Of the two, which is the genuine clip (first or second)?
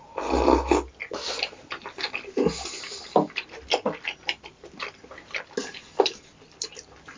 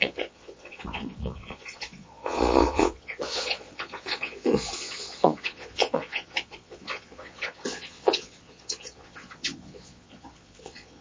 first